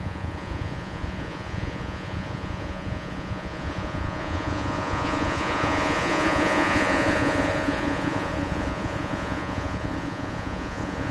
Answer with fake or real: fake